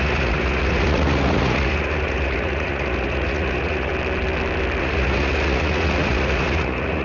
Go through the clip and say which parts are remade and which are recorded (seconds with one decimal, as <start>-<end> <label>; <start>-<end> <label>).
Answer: 0.0-3.9 remade; 3.9-4.8 recorded; 4.8-7.0 remade